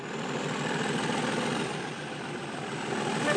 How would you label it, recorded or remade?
recorded